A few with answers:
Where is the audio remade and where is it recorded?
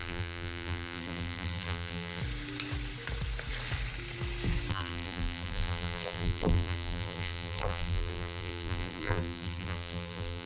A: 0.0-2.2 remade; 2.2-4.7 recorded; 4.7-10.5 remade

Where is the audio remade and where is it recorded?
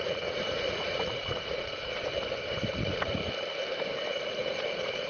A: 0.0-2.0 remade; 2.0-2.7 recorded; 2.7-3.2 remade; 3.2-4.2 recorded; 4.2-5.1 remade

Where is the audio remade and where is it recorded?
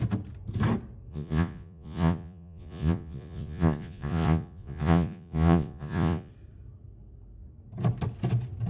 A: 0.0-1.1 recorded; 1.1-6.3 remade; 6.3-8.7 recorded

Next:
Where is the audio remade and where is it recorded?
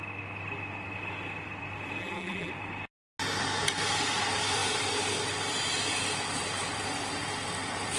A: 0.0-2.0 recorded; 2.0-2.5 remade; 2.5-8.0 recorded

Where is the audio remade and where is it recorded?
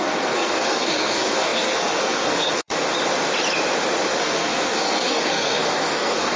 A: 0.0-2.7 remade; 2.7-4.2 recorded; 4.2-6.4 remade